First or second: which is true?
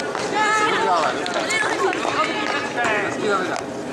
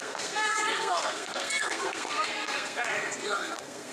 first